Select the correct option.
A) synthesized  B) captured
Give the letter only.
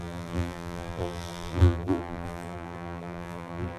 A